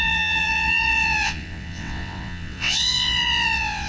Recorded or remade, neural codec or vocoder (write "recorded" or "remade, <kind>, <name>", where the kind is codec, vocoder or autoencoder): remade, vocoder, WaveNeXt